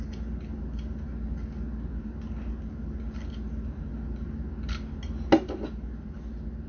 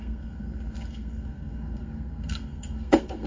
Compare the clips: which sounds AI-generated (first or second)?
second